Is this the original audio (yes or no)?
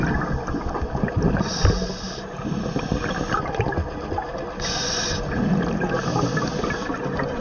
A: yes